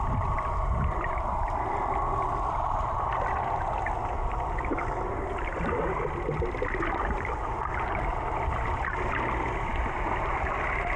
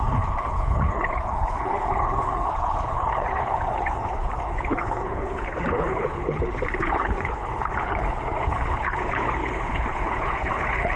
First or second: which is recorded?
first